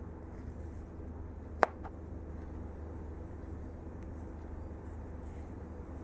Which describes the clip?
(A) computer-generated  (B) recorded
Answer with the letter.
B